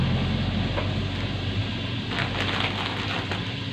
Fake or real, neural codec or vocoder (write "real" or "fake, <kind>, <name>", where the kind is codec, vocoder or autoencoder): real